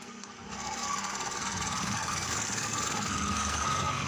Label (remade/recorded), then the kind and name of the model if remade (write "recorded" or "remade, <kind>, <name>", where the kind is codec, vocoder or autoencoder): remade, codec, SNAC